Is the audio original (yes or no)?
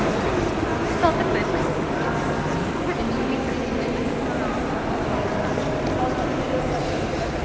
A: yes